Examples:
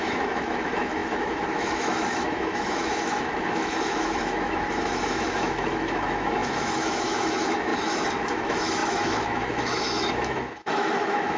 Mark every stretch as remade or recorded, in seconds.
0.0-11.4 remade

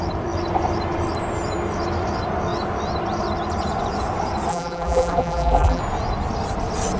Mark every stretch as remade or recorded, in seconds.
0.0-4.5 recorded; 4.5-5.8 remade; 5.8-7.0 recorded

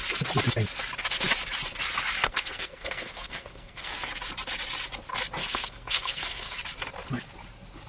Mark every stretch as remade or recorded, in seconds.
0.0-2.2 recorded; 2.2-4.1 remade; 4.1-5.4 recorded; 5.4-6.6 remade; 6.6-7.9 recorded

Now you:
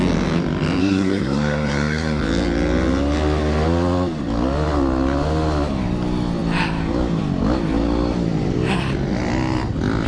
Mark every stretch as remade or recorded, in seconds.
0.0-0.8 recorded; 0.8-2.2 remade; 2.2-10.1 recorded

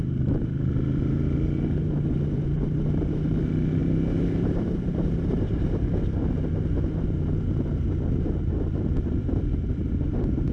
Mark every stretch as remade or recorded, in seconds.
0.0-10.5 remade